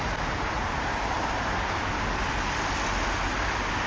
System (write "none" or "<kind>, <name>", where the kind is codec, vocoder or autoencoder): none